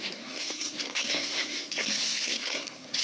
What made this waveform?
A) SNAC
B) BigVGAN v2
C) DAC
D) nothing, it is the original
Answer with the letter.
A